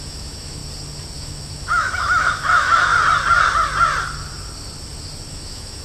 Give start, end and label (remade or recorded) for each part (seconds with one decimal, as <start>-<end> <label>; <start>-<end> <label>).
0.0-0.6 remade; 0.6-1.2 recorded; 1.2-2.9 remade; 2.9-5.3 recorded; 5.3-5.8 remade